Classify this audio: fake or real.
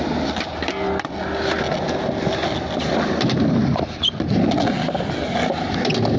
real